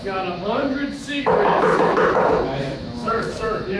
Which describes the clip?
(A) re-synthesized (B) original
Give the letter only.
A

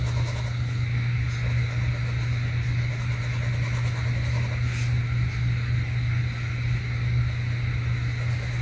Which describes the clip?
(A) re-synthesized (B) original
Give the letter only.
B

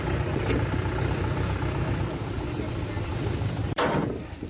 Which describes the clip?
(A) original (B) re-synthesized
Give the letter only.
B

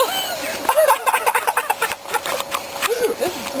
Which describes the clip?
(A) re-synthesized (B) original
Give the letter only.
B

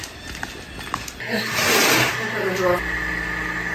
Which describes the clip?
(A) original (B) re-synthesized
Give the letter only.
A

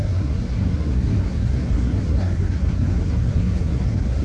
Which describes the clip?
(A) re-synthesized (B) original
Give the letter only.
A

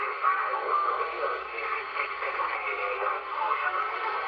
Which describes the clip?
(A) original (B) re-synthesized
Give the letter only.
B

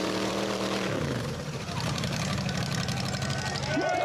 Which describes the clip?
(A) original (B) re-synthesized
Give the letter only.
B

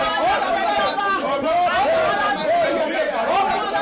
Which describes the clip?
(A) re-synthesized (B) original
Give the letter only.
B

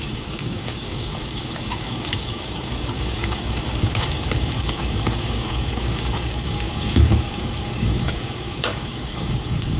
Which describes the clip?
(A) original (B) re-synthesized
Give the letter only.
B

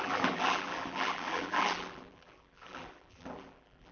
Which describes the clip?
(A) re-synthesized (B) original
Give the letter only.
A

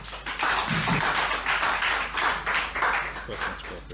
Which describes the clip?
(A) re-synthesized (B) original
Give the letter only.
B